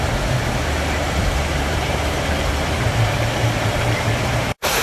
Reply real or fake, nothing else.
fake